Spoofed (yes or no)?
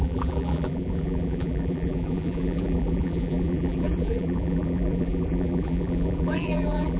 yes